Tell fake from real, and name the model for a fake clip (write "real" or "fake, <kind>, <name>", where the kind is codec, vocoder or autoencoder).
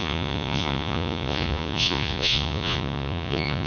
fake, vocoder, Vocos